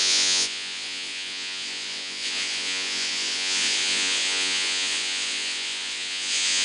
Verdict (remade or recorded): remade